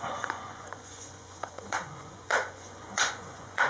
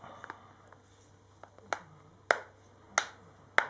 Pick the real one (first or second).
second